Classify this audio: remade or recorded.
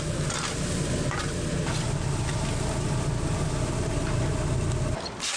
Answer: recorded